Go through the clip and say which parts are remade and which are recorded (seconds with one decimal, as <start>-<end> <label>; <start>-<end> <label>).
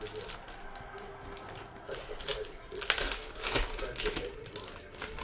0.0-5.2 recorded